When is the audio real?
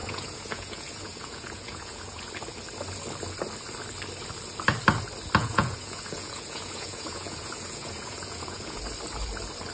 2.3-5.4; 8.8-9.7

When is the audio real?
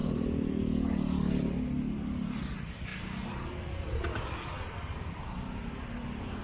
0.0-6.4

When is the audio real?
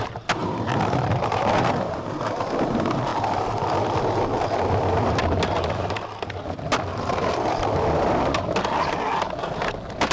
0.0-0.4; 1.9-6.9; 7.8-10.1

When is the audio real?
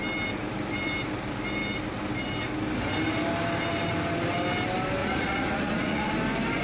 0.0-5.0; 6.1-6.6